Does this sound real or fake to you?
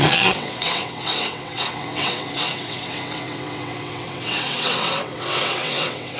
fake